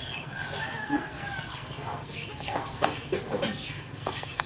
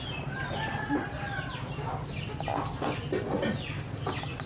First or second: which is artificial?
first